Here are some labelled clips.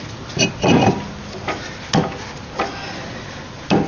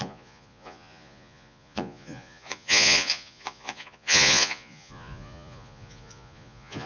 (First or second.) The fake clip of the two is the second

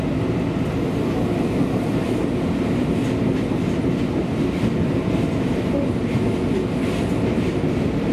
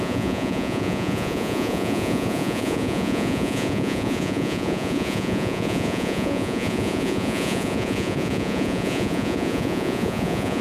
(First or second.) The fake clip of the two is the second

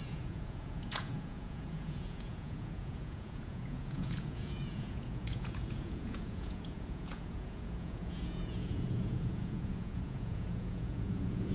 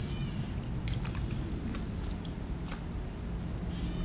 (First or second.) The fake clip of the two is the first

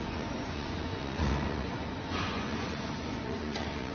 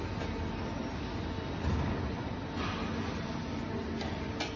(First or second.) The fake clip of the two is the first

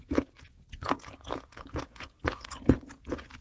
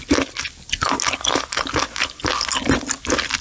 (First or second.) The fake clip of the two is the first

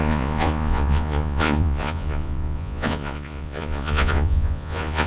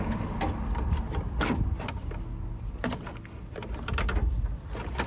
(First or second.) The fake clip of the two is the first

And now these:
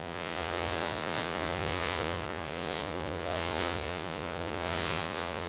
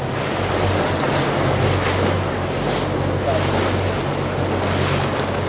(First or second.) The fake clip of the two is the first